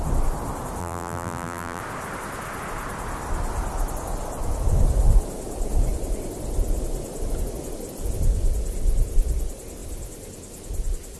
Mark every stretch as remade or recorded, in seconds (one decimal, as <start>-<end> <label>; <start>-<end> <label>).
0.0-0.8 recorded; 0.8-1.8 remade; 1.8-11.2 recorded